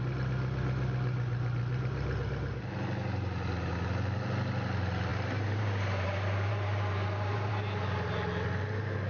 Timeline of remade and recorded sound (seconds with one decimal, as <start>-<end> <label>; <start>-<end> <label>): 0.0-5.1 recorded; 5.1-7.5 remade; 7.5-9.1 recorded